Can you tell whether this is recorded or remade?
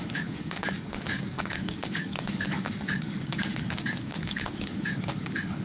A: remade